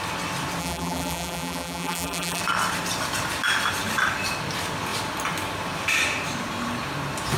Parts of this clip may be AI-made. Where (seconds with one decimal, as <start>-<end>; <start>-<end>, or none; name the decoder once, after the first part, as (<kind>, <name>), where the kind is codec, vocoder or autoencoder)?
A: 0.6-2.4 (vocoder, BigVGAN v2)